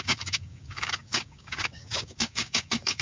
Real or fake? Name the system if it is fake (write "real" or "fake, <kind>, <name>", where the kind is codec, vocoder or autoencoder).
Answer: fake, codec, DAC